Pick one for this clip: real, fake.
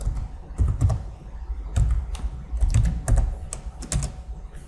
real